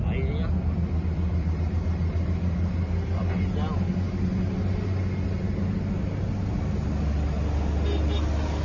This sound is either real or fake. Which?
real